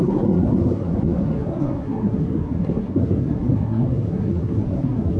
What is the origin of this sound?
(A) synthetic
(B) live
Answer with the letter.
A